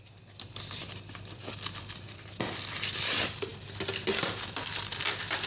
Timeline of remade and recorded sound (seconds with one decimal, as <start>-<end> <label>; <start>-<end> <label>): 0.0-5.5 recorded